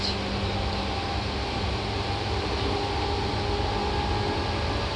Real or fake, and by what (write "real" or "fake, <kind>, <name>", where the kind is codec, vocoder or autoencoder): real